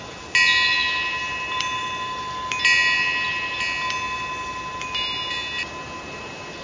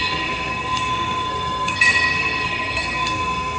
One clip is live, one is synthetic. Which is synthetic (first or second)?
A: second